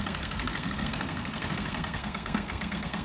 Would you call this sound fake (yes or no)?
yes